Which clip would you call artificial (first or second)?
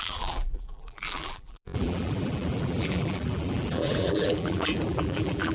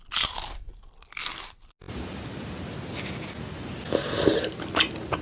first